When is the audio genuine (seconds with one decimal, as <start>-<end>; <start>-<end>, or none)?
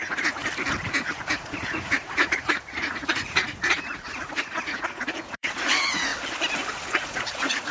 0.4-0.9; 6.1-6.7